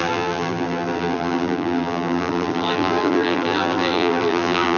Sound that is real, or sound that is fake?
fake